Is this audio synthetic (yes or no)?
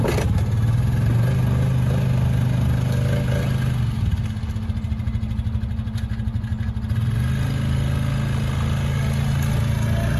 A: no